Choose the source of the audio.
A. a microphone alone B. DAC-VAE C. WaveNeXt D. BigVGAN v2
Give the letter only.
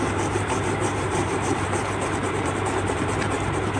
D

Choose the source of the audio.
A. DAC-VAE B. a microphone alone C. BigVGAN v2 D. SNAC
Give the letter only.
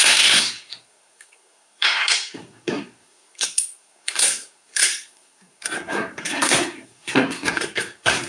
D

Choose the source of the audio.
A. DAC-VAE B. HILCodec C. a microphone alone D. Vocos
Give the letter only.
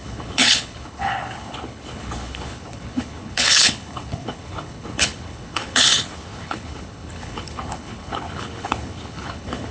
B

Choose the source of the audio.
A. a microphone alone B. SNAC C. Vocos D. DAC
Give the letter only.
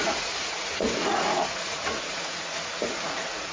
C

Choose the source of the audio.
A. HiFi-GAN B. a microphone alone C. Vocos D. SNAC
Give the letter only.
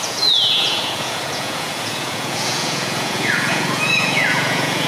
C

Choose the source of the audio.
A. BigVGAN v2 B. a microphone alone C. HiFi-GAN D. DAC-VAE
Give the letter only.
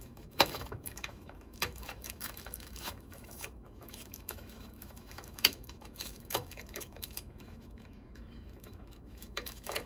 D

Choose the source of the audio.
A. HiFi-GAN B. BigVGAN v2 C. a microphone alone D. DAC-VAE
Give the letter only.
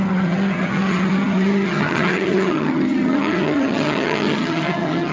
A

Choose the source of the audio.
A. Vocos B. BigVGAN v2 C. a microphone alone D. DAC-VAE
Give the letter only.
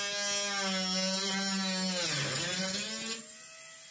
C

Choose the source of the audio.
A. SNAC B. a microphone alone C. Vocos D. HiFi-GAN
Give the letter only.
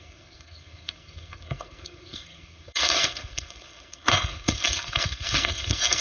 A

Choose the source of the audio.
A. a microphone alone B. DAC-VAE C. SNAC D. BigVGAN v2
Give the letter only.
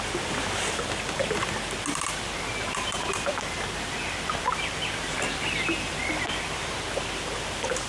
A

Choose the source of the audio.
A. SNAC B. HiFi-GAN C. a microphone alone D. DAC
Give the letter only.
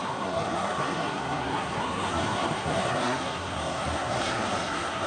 A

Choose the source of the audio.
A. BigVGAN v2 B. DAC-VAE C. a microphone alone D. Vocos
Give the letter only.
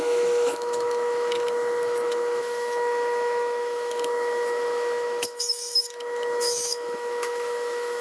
B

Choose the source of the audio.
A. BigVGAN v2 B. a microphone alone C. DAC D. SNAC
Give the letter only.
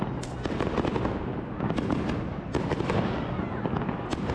B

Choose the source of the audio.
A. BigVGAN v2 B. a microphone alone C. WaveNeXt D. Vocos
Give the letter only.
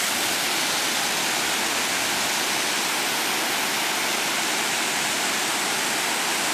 B